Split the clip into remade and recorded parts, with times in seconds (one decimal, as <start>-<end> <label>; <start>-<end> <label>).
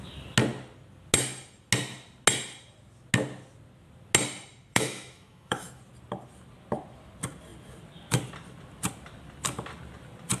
0.0-4.7 recorded; 4.7-5.8 remade; 5.8-10.4 recorded